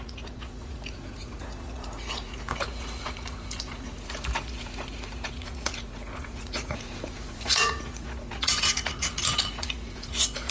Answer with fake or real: fake